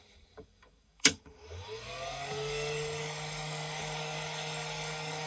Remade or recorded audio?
remade